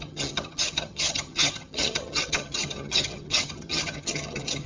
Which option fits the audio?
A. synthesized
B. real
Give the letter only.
A